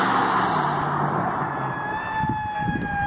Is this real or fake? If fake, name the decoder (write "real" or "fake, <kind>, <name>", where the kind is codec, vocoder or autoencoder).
real